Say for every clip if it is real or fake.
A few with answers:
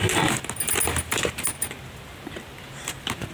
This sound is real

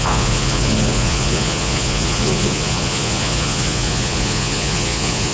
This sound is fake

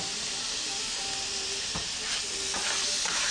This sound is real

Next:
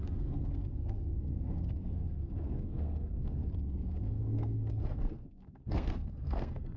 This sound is fake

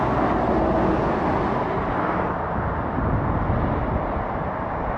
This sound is real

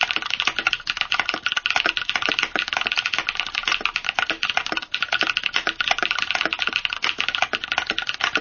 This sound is real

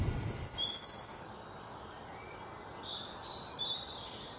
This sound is real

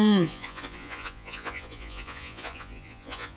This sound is fake